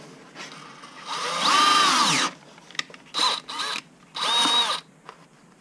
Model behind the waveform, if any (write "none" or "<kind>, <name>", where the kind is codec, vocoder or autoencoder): none